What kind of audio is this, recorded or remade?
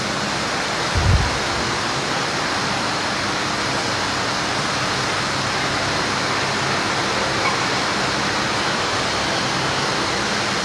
recorded